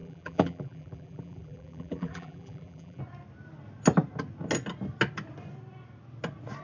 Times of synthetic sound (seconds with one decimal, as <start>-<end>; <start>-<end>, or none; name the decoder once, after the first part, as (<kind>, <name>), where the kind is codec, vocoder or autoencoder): 0.0-3.0 (vocoder, BigVGAN v2)